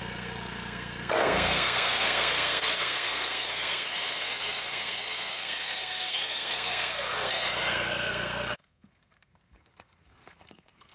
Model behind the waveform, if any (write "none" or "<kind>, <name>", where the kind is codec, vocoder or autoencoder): codec, SNAC